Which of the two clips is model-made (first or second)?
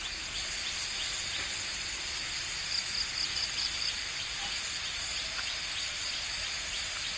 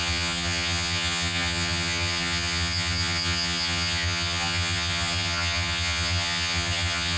second